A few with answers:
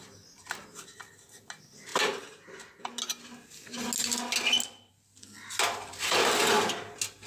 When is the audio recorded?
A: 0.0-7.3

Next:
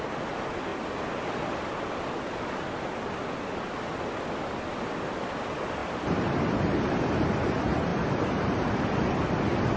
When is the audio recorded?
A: 0.0-5.8; 6.8-7.9; 8.8-9.8

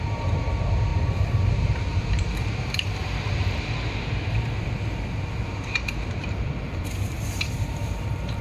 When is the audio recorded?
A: 0.9-1.5; 3.0-5.5

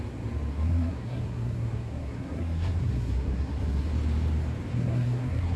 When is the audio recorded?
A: 0.0-0.5; 3.9-4.7